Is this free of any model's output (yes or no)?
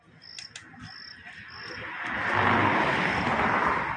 yes